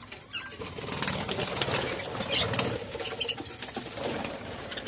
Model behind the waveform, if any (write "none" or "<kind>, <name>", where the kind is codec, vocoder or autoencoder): none